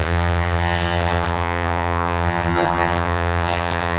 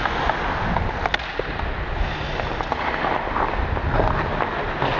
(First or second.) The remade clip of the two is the first